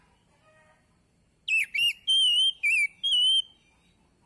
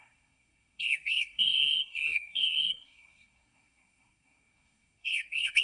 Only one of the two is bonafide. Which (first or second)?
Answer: first